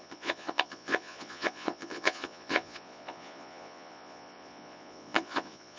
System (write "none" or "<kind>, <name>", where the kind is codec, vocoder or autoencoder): vocoder, Vocos